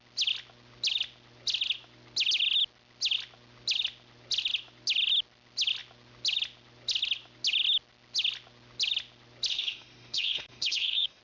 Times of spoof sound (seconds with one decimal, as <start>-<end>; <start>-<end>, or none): 9.5-11.2